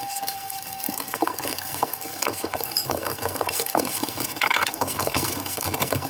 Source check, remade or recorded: remade